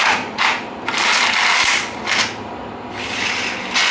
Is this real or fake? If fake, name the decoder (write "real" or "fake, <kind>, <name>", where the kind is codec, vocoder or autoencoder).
real